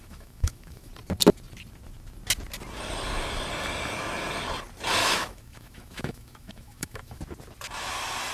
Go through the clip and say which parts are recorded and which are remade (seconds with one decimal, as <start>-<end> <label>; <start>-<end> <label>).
0.0-0.9 remade; 0.9-5.0 recorded; 5.0-7.2 remade; 7.2-8.3 recorded